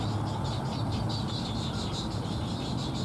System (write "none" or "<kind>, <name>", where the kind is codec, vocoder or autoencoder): none